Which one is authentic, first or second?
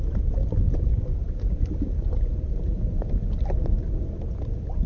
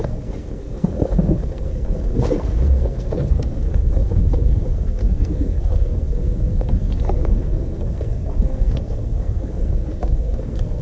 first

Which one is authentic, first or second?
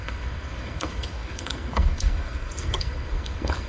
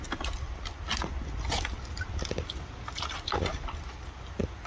second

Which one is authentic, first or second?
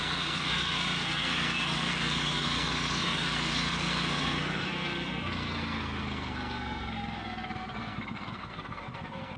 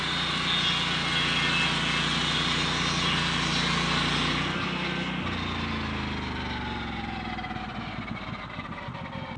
second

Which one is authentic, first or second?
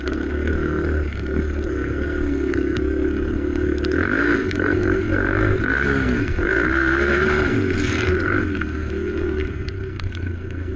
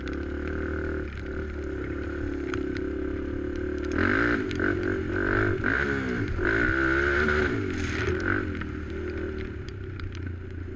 second